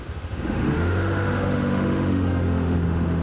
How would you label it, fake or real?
fake